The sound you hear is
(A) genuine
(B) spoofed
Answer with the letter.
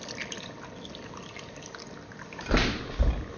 A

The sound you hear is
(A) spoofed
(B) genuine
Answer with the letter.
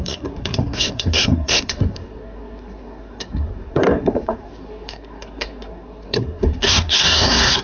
A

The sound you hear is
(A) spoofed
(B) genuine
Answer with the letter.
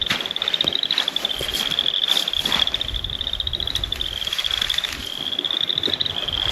B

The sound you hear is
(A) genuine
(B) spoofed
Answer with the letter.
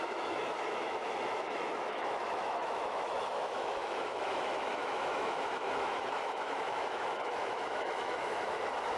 B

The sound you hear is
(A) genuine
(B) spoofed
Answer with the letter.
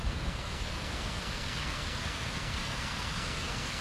B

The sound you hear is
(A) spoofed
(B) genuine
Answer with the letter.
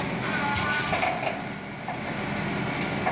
B